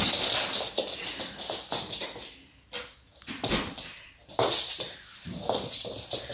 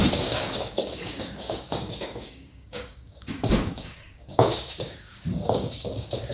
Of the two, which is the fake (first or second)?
second